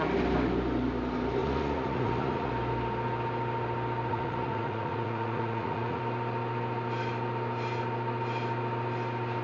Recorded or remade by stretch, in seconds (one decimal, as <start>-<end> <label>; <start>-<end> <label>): 0.0-1.4 recorded; 1.4-2.5 remade; 2.5-4.1 recorded; 4.1-6.0 remade; 6.0-9.4 recorded